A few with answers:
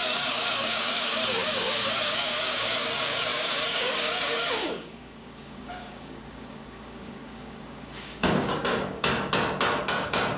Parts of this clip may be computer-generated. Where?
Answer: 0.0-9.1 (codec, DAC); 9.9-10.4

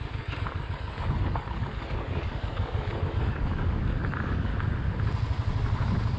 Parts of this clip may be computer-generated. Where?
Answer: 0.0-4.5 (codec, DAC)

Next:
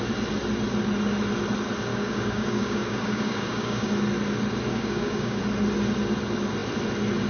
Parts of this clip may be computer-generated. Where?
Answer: 1.9-3.9 (codec, DAC); 4.7-5.4

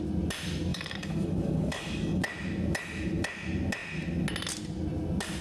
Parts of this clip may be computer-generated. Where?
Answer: 0.7-2.2 (codec, DAC)